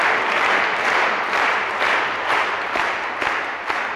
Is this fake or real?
real